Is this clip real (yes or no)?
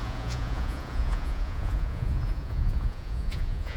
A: no